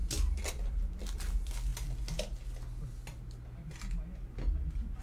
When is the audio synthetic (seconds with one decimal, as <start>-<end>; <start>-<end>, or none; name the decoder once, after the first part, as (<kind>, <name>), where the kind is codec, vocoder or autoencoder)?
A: none